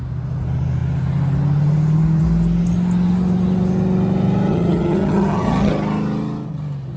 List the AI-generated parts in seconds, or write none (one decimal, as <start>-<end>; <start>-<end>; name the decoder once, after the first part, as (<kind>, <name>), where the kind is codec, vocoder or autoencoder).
4.5-5.7 (vocoder, HiFi-GAN)